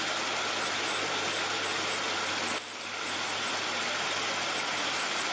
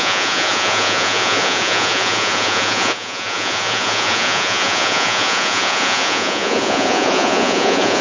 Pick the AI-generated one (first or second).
second